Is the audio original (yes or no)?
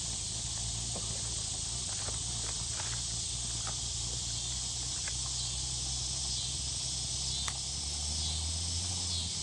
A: yes